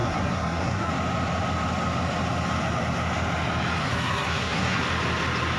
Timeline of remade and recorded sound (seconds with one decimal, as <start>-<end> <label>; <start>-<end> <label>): 0.0-0.9 remade; 0.9-3.8 recorded; 3.8-4.8 remade; 4.8-5.6 recorded